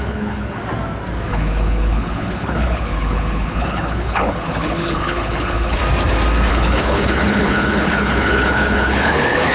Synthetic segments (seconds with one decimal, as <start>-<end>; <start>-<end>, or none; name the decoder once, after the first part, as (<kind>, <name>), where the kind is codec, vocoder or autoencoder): 0.0-0.6 (codec, HILCodec); 1.3-5.8; 6.5-9.5